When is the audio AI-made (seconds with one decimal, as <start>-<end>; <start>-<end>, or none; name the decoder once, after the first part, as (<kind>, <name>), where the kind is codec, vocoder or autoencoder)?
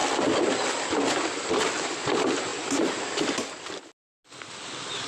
none